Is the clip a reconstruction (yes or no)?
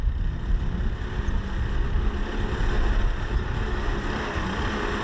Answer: no